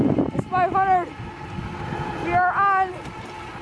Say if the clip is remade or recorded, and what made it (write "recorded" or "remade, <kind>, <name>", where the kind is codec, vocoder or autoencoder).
recorded